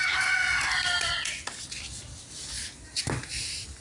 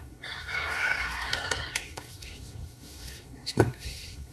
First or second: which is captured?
first